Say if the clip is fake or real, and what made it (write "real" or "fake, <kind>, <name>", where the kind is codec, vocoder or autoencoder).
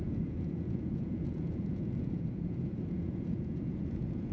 fake, vocoder, Vocos